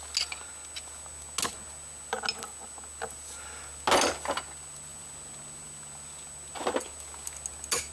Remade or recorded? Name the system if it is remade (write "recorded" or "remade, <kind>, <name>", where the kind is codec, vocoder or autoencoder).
recorded